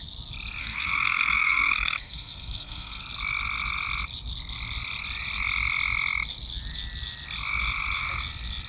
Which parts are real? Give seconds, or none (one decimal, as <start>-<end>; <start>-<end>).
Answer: 0.0-0.6; 3.0-8.7